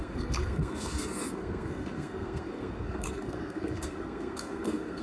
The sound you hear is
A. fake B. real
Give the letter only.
A